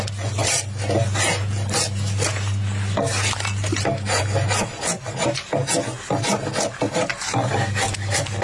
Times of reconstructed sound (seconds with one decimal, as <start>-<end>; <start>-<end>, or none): none